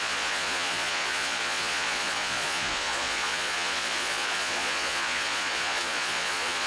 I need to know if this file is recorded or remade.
remade